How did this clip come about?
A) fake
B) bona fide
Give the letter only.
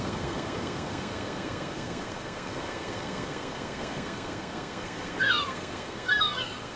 A